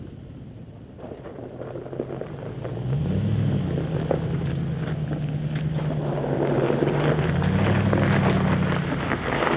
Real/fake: real